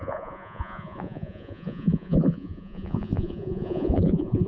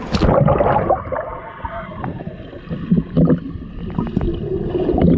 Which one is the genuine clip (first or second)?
second